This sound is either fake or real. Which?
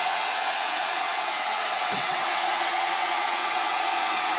fake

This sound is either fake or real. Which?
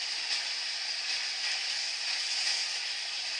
real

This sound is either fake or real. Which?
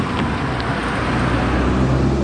real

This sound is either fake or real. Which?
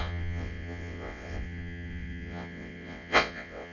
fake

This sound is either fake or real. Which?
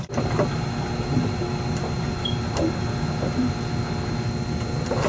real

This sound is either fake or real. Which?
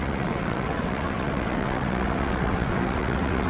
fake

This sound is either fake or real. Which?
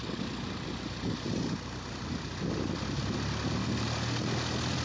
real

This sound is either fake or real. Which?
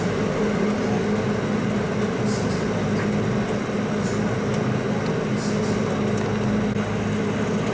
real